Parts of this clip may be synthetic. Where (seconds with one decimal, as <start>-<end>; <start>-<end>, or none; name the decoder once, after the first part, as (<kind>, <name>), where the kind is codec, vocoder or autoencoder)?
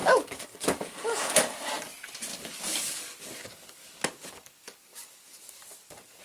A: 0.0-1.3 (codec, DAC); 2.3-6.2